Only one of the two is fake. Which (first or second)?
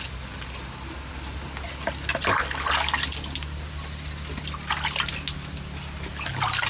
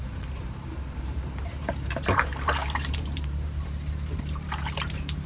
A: second